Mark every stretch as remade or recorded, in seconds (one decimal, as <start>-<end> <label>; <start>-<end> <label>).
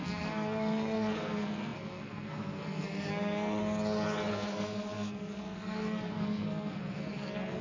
0.0-3.6 remade; 3.6-4.3 recorded; 4.3-7.6 remade